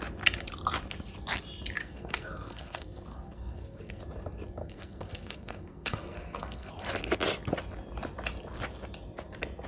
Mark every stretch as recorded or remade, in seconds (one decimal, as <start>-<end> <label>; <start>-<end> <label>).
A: 0.0-1.8 recorded; 1.8-4.0 remade; 4.0-4.6 recorded; 4.6-6.7 remade; 6.7-9.7 recorded